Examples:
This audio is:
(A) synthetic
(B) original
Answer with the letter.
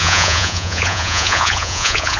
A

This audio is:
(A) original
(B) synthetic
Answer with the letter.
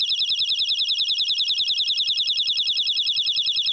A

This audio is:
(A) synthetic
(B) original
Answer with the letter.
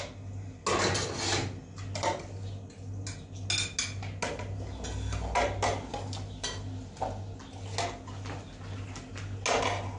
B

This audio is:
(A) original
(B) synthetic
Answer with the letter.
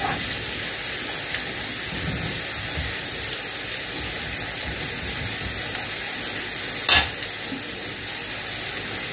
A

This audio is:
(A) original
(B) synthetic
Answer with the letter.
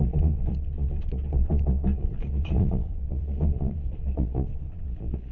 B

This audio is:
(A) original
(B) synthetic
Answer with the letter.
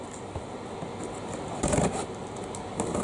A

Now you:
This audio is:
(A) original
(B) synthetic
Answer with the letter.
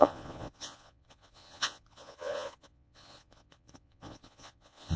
B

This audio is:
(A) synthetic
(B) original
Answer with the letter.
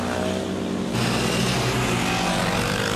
B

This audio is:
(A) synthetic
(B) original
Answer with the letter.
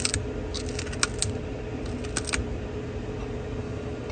B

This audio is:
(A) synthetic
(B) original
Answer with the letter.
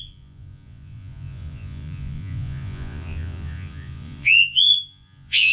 A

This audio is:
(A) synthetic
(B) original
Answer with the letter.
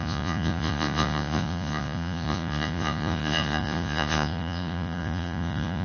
A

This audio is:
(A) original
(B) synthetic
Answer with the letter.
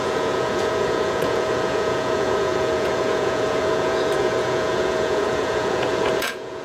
B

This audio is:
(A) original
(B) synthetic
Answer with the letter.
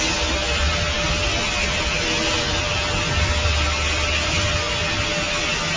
A